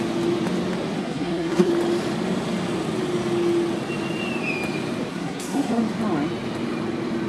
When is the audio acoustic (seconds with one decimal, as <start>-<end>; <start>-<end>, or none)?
0.0-1.0; 1.7-5.1; 5.8-7.3